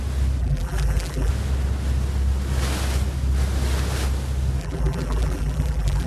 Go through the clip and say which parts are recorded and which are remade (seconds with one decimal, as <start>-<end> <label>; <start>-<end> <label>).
0.0-0.4 recorded; 0.4-1.3 remade; 1.3-4.6 recorded; 4.6-6.1 remade